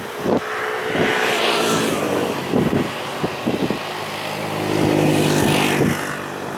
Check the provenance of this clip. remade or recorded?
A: recorded